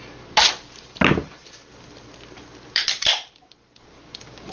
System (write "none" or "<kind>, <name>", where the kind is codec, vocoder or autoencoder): none